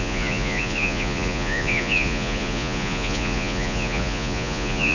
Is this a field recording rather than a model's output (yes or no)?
no